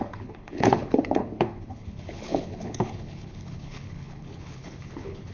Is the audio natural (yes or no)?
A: no